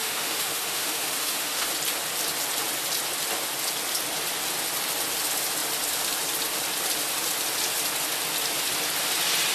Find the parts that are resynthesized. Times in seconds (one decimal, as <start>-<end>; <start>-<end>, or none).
0.0-1.7